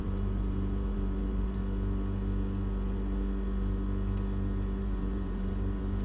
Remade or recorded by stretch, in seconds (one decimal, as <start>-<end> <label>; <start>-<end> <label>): 0.0-1.6 remade; 1.6-4.8 recorded; 4.8-6.0 remade